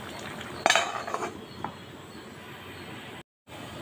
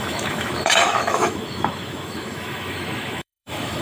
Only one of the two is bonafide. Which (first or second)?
first